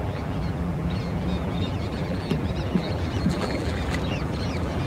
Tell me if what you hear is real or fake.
fake